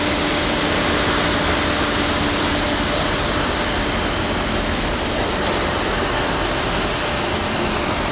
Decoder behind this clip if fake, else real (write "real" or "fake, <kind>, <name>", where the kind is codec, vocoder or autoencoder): real